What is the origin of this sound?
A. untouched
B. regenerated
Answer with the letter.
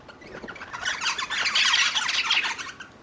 A